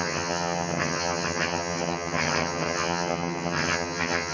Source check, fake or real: fake